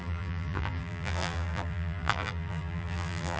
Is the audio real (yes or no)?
no